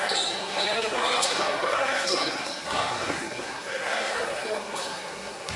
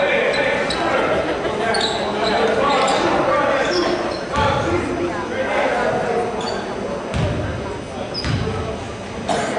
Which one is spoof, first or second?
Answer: first